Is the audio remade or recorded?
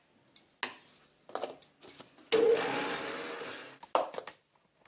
recorded